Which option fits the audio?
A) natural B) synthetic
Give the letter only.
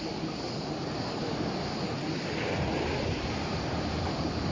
A